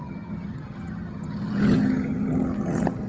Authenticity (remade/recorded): remade